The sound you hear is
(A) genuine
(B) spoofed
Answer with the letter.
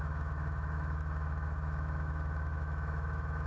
B